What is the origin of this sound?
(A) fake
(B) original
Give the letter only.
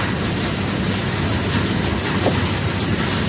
B